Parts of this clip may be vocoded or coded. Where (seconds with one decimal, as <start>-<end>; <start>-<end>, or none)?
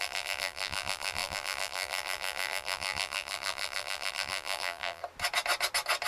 0.0-5.0